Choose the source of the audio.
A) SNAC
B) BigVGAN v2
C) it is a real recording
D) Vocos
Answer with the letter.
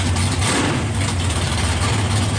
C